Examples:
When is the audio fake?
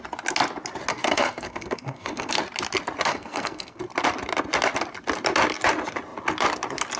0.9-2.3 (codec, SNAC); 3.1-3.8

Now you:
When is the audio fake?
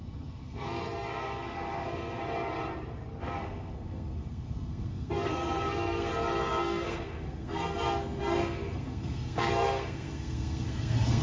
0.0-2.2 (codec, SNAC); 3.2-6.1; 6.6-11.2